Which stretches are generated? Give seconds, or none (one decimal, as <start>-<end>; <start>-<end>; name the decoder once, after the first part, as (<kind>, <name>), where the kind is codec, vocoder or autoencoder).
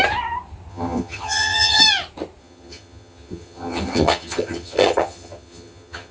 0.7-1.8 (vocoder, HiFi-GAN); 2.4-6.1